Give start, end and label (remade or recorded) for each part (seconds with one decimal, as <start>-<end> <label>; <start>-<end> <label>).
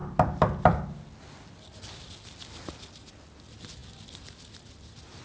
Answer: 0.0-5.2 recorded